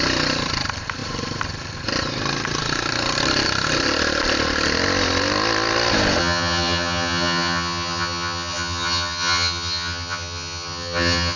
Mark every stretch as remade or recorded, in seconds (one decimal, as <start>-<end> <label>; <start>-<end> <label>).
0.0-6.2 recorded; 6.2-11.4 remade